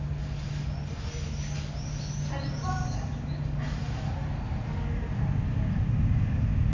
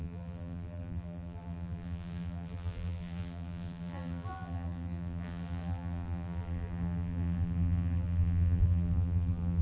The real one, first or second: first